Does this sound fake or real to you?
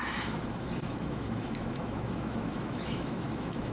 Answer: fake